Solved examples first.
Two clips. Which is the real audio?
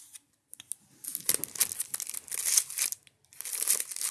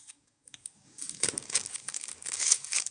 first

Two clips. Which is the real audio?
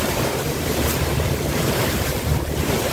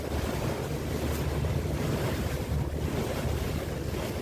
second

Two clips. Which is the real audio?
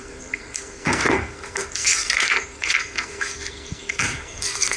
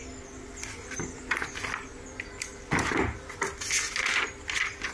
second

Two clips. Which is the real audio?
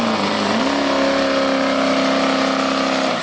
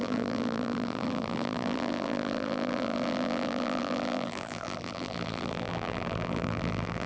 first